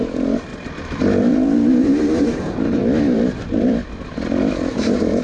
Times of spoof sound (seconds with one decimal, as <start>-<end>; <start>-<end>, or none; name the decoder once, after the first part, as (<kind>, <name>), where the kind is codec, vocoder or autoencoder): 0.0-0.5 (vocoder, BigVGAN v2); 1.2-2.8; 4.7-5.2